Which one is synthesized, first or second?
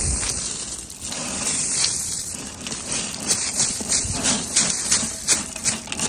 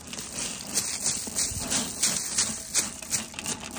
first